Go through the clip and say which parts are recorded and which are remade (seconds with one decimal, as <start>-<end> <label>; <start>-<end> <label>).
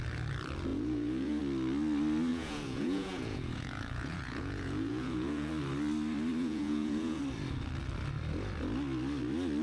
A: 0.0-0.7 recorded; 0.7-1.4 remade; 1.4-2.3 recorded; 2.3-5.5 remade; 5.5-6.4 recorded; 6.4-7.2 remade; 7.2-9.6 recorded